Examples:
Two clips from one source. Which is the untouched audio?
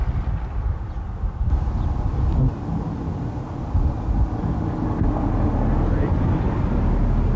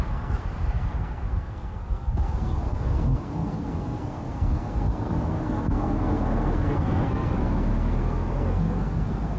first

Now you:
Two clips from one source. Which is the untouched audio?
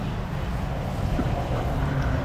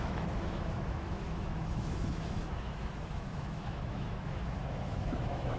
first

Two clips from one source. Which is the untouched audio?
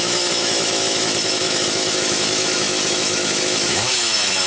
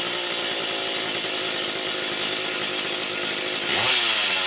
second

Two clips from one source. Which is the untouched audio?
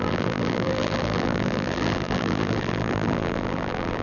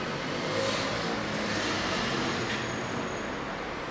second